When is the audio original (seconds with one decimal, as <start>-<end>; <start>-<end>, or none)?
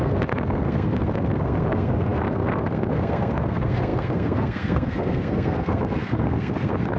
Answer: none